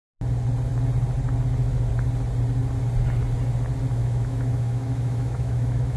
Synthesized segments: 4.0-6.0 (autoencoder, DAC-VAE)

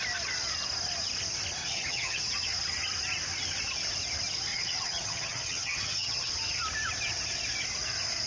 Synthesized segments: 1.6-2.2 (vocoder, HiFi-GAN); 4.5-6.3

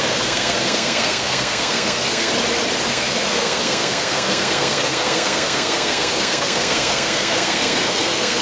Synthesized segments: 0.0-2.3 (codec, SNAC); 2.9-8.4

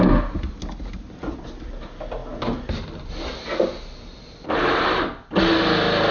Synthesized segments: none

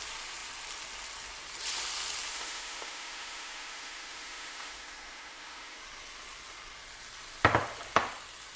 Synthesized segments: 2.3-5.8 (autoencoder, DAC-VAE)

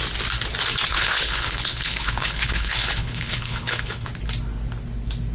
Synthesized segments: 0.9-4.1 (codec, HILCodec)

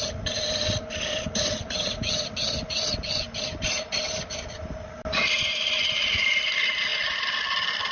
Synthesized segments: none

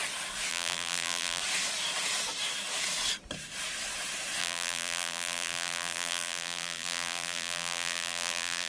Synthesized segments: 0.5-1.4 (vocoder, BigVGAN v2); 4.4-8.7